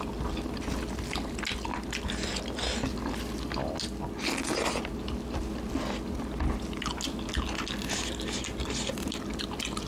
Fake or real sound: real